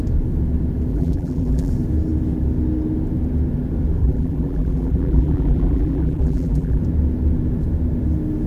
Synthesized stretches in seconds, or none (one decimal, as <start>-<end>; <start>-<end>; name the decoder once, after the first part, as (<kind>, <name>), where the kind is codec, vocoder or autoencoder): 0.9-1.7 (vocoder, BigVGAN v2); 4.0-6.8